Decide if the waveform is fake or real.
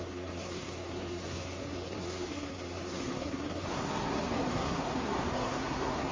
fake